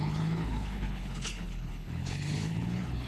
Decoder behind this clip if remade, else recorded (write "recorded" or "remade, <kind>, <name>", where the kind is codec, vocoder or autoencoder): remade, codec, HILCodec